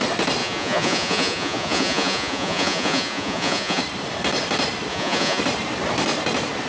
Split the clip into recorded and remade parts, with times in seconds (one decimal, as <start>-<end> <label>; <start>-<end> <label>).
0.0-0.4 recorded; 0.4-3.8 remade; 3.8-4.9 recorded; 4.9-5.4 remade; 5.4-6.7 recorded